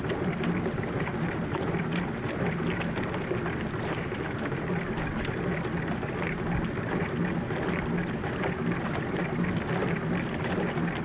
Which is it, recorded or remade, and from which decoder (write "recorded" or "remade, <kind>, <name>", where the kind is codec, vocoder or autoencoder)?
recorded